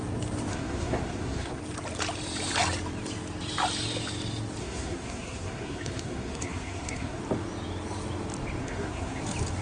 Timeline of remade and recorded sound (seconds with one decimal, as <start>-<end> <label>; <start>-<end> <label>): 0.0-0.5 recorded; 0.5-1.6 remade; 1.6-4.6 recorded; 4.6-7.2 remade; 7.2-8.6 recorded; 8.6-9.2 remade; 9.2-9.6 recorded